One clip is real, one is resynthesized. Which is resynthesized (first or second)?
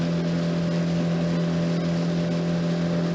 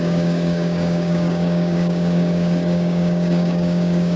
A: second